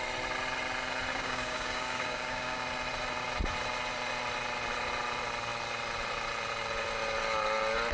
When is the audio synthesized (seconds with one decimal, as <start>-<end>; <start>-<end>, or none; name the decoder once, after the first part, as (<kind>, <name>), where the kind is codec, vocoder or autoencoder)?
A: 1.1-2.6 (codec, DAC)

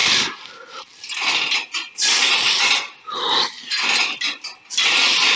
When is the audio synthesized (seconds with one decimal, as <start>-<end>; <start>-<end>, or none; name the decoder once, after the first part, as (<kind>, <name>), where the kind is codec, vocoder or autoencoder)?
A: 0.0-1.3 (vocoder, BigVGAN v2); 2.1-2.7

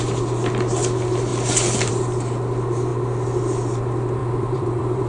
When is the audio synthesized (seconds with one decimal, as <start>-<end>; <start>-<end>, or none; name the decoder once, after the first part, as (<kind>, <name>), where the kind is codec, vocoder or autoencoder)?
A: 4.2-5.1 (vocoder, BigVGAN v2)

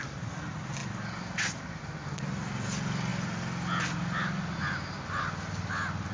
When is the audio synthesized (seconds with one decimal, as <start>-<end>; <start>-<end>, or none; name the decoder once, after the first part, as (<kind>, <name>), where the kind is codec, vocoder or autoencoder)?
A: none